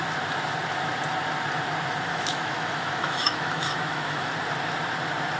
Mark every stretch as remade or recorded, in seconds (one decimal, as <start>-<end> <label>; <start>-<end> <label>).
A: 0.0-2.1 recorded; 2.1-4.3 remade; 4.3-5.4 recorded